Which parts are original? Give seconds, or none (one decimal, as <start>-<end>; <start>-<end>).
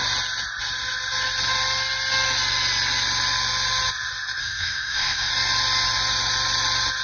0.0-4.4; 5.3-7.0